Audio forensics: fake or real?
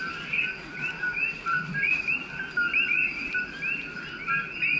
real